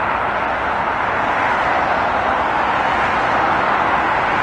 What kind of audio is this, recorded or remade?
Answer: recorded